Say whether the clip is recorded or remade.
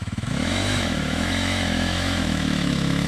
remade